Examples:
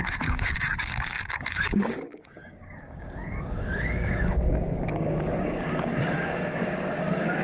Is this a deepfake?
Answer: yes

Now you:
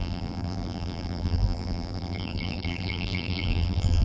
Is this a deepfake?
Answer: yes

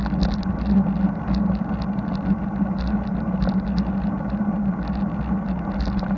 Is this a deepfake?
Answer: no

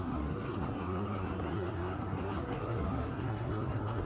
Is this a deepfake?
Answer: yes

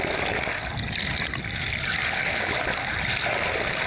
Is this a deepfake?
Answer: no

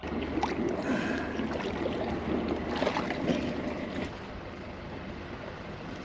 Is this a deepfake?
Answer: no